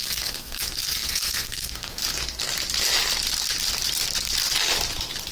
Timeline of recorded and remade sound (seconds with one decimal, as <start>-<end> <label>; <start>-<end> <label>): 0.0-2.0 remade; 2.0-5.3 recorded